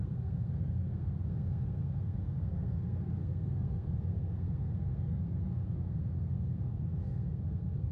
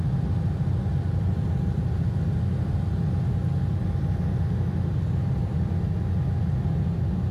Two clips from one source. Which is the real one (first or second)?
second